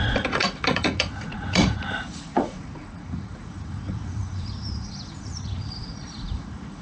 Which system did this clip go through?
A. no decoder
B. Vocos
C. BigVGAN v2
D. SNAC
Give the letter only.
B